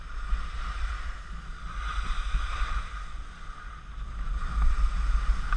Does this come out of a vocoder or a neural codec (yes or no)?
no